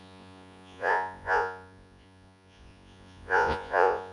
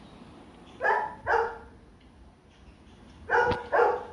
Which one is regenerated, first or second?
first